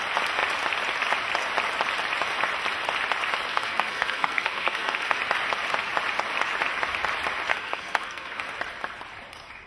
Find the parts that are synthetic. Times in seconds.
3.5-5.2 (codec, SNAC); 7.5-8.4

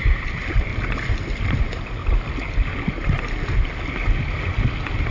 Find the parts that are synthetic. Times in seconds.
0.0-0.7 (vocoder, BigVGAN v2); 1.6-2.0

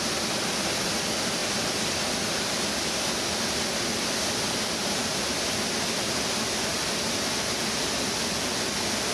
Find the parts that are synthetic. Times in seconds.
none

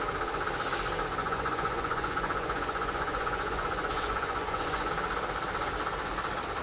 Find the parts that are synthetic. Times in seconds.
1.2-4.9 (vocoder, Vocos)

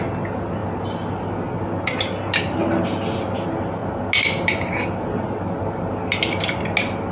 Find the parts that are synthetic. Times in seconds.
none

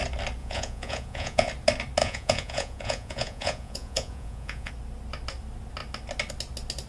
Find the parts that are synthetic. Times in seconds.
0.4-1.5 (vocoder, Vocos); 2.0-4.7

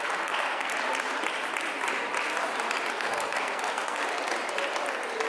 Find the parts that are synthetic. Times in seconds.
0.0-0.7 (codec, SNAC); 2.9-4.0